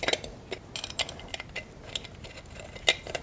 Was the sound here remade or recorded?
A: recorded